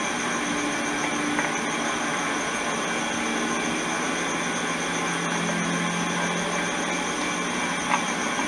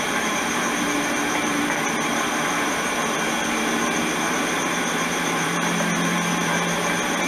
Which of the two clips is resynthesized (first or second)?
second